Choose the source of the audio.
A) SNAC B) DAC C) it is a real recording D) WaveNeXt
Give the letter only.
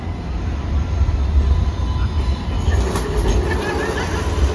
C